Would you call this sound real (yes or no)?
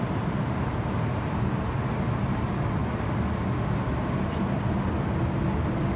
yes